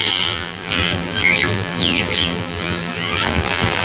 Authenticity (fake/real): fake